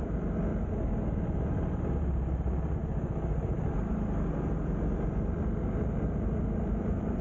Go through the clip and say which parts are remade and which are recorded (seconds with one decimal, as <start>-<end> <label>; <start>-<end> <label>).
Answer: 0.0-0.5 remade; 0.5-2.0 recorded; 2.0-2.8 remade; 2.8-6.0 recorded; 6.0-7.2 remade